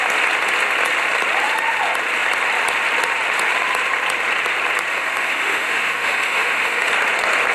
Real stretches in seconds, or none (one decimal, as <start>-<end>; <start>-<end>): 0.0-4.9; 6.9-7.5